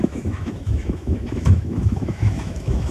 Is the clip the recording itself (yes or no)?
no